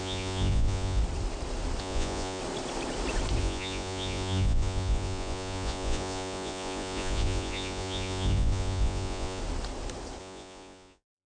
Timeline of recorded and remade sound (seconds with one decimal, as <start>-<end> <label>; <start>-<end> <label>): 0.0-1.0 remade; 1.0-1.8 recorded; 1.8-2.4 remade; 2.4-3.4 recorded; 3.4-9.4 remade; 9.4-10.2 recorded; 10.2-11.3 remade